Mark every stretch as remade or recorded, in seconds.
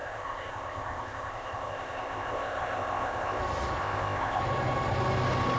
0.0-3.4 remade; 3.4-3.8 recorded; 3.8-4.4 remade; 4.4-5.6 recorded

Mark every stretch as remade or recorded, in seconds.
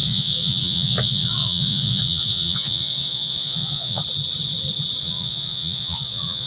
0.0-4.0 remade; 4.0-5.0 recorded; 5.0-6.5 remade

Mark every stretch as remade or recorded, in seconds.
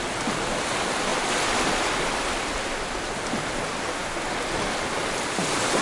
0.0-5.8 recorded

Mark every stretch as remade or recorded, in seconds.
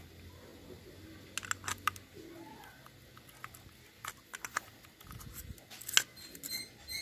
0.0-7.0 recorded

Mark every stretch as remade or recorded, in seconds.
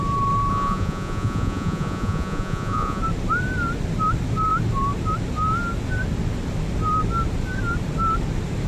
0.0-0.5 recorded; 0.5-3.0 remade; 3.0-8.7 recorded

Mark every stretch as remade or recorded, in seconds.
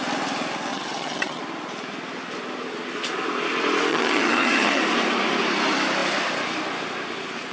0.0-0.7 recorded; 0.7-1.4 remade; 1.4-3.9 recorded; 3.9-4.8 remade; 4.8-7.5 recorded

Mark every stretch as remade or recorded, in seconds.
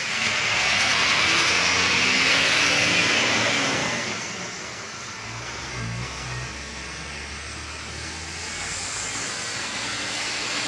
0.0-10.7 remade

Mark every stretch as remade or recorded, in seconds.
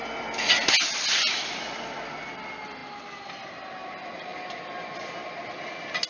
0.0-6.1 recorded